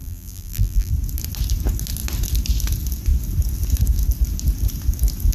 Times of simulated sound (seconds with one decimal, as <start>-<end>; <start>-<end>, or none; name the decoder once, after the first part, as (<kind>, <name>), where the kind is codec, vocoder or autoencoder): 0.0-0.9 (vocoder, BigVGAN v2)

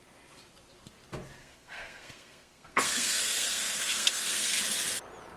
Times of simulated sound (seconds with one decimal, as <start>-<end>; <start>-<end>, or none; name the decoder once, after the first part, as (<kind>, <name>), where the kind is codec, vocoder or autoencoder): 1.4-4.6 (codec, SNAC)

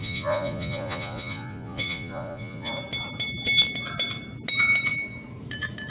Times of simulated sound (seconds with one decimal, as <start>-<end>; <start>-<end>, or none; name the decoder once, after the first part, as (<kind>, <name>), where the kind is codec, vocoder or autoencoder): 0.0-2.7 (vocoder, Vocos)

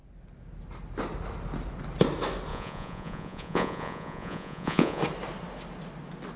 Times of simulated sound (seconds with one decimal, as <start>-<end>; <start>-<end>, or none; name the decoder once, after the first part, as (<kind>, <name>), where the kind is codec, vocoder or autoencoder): 2.5-5.0 (vocoder, Vocos)

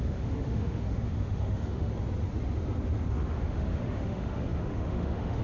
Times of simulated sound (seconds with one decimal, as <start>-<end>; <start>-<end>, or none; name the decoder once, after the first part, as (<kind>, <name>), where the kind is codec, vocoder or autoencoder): 0.0-1.9 (autoencoder, DAC-VAE); 3.1-5.4